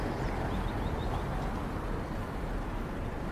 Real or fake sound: real